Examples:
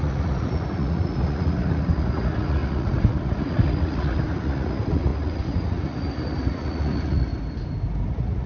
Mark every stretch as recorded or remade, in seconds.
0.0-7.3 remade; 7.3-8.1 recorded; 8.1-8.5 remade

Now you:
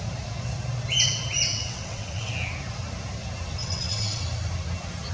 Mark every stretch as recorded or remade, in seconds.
0.0-1.5 recorded; 1.5-2.3 remade; 2.3-3.6 recorded; 3.6-4.2 remade; 4.2-5.1 recorded

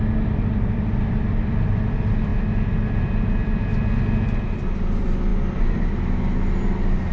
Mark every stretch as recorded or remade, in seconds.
0.0-2.3 remade; 2.3-3.3 recorded; 3.3-3.7 remade; 3.7-4.8 recorded; 4.8-5.3 remade; 5.3-7.1 recorded